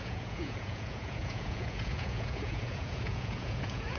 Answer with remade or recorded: remade